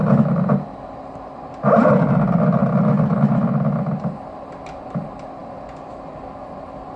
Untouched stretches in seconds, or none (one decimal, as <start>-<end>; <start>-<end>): 1.4-7.0